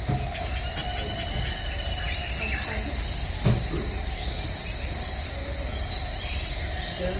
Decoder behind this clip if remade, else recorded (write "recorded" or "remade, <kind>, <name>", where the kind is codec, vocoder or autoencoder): recorded